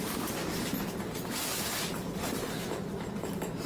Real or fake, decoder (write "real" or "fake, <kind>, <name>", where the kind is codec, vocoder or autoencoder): fake, vocoder, BigVGAN v2